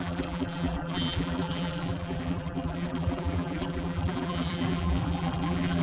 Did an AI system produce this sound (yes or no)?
yes